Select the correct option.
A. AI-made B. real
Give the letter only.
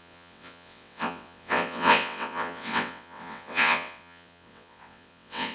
A